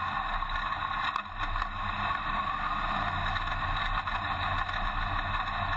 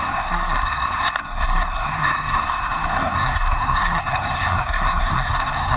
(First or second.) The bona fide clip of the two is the first